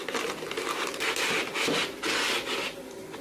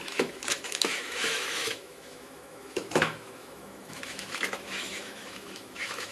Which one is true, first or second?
first